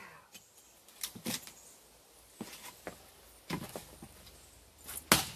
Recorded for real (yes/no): yes